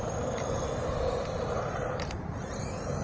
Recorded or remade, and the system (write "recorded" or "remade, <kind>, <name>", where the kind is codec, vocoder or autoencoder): recorded